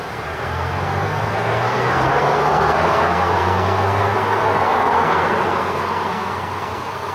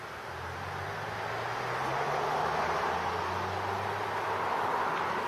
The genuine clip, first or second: second